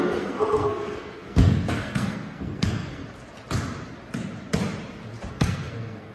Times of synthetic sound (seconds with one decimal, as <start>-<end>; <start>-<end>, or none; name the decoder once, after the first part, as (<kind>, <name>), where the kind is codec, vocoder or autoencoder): 0.0-3.0 (codec, SNAC); 5.3-6.1